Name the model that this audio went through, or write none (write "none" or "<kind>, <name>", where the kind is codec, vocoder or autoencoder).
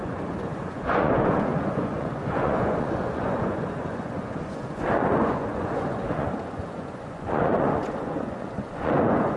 vocoder, Vocos